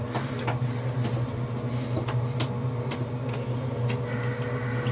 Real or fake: real